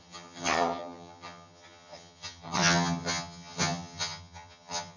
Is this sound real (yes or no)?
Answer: no